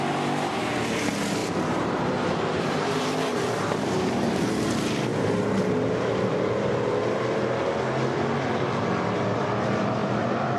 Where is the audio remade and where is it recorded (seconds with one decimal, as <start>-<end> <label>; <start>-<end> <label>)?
0.0-1.4 recorded; 1.4-4.4 remade; 4.4-10.0 recorded; 10.0-10.6 remade

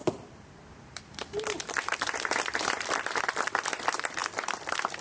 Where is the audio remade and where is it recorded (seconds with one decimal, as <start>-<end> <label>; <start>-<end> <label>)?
0.0-5.0 remade

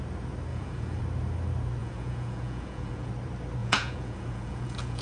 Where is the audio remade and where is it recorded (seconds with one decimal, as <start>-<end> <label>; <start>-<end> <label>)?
0.0-0.5 recorded; 0.5-1.0 remade; 1.0-1.8 recorded; 1.8-3.1 remade; 3.1-3.6 recorded; 3.6-5.0 remade

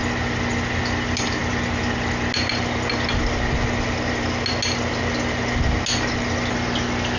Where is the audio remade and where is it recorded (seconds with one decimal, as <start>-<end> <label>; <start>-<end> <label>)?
0.0-7.2 recorded

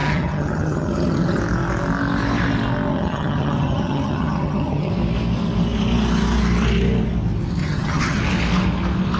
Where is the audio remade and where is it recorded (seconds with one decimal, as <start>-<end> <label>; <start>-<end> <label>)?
0.0-1.4 remade; 1.4-2.9 recorded; 2.9-4.9 remade; 4.9-7.6 recorded; 7.6-8.2 remade; 8.2-9.2 recorded

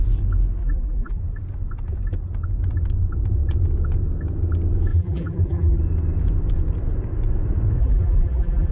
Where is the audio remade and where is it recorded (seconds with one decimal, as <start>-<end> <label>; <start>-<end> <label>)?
0.0-0.6 recorded; 0.6-1.2 remade; 1.2-4.9 recorded; 4.9-5.8 remade; 5.8-7.8 recorded; 7.8-8.7 remade